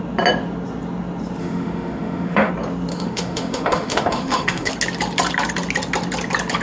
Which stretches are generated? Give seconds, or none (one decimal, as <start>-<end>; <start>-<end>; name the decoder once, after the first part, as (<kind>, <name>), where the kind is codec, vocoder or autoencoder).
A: 1.4-2.5 (autoencoder, DAC-VAE); 2.9-4.7

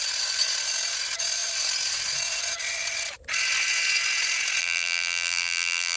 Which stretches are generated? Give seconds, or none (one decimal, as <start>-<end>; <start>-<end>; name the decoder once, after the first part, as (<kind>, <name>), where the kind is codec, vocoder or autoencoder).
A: 4.6-6.0 (vocoder, BigVGAN v2)